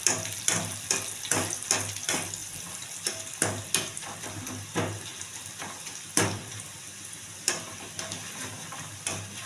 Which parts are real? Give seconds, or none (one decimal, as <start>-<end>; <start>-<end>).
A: 0.0-2.4; 3.6-5.1; 7.9-9.5